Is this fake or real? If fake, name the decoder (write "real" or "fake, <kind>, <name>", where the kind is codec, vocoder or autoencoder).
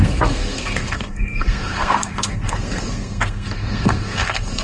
fake, codec, SNAC